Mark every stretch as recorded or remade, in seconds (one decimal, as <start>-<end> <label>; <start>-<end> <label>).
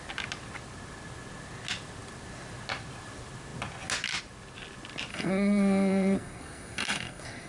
0.0-5.1 recorded; 5.1-7.5 remade